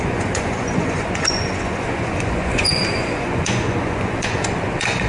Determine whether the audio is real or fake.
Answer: fake